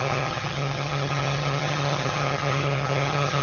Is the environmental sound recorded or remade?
remade